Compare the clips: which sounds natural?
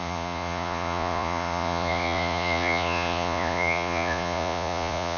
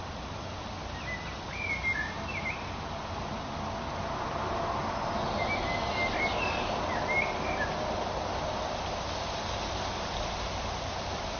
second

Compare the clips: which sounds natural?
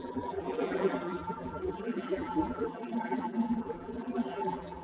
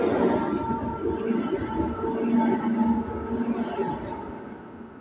second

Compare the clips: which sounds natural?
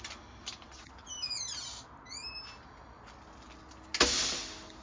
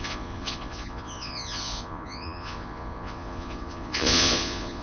first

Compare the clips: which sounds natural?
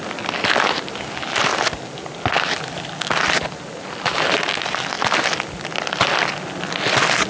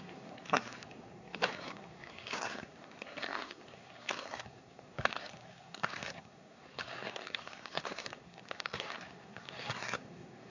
first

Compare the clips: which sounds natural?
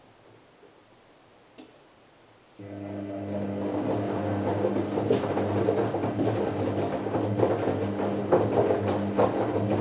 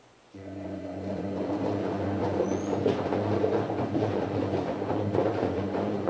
first